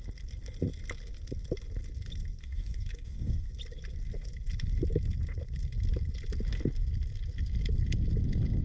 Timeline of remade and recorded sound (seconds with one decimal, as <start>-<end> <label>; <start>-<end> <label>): 0.0-2.4 recorded; 2.4-3.5 remade; 3.5-8.6 recorded